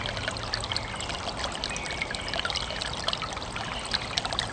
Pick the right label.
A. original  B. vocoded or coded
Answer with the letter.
A